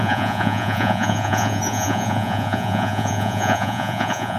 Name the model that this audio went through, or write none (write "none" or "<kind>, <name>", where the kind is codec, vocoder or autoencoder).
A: vocoder, Vocos